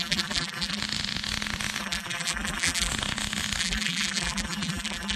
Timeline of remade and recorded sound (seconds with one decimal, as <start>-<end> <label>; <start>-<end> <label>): 0.0-0.8 remade; 0.8-1.8 recorded; 1.8-2.9 remade; 2.9-3.6 recorded; 3.6-5.2 remade